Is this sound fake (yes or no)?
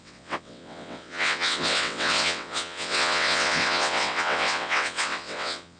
yes